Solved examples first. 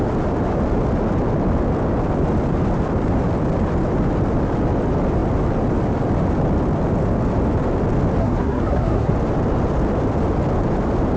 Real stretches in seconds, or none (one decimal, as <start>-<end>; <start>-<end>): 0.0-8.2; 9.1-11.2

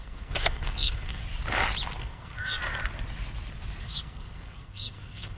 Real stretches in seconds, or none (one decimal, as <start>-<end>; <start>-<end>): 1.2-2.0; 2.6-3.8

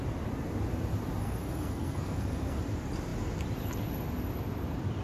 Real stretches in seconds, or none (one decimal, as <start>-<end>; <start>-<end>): 0.0-1.2; 2.6-5.0

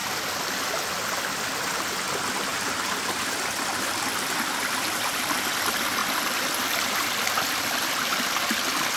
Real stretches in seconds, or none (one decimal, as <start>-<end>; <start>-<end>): 0.0-9.0